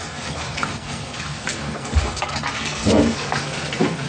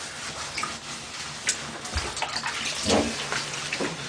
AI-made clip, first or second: first